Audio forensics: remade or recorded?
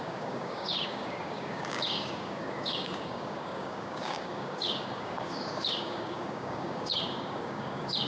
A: remade